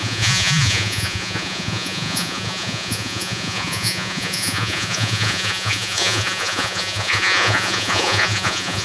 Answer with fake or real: fake